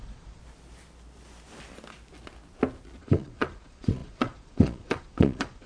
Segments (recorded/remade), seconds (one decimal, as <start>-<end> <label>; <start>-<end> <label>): 0.0-0.4 remade; 0.4-3.0 recorded; 3.0-5.7 remade